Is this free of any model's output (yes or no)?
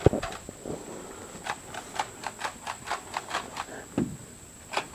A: yes